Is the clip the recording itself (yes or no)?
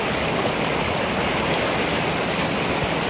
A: yes